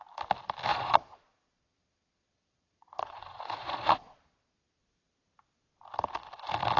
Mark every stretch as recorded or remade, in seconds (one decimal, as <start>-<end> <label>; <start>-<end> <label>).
0.0-0.7 recorded; 0.7-4.8 remade; 4.8-6.8 recorded